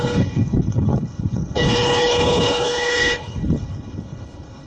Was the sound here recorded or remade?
remade